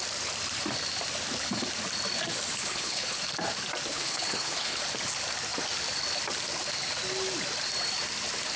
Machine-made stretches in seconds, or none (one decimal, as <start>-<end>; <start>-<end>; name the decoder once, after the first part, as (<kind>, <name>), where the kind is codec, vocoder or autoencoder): 2.6-3.2 (codec, HILCodec); 3.9-4.8